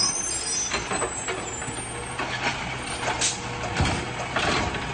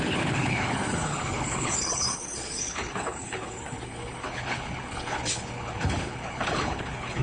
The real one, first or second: first